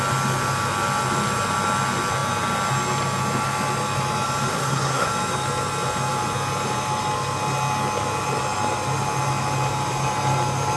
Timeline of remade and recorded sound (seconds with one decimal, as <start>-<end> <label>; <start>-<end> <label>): 0.0-4.5 recorded; 4.5-5.1 remade; 5.1-10.8 recorded